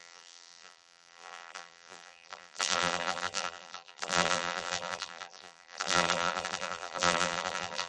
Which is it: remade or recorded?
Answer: remade